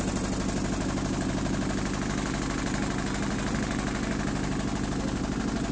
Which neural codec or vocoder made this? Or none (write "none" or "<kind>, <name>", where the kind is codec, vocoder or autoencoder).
none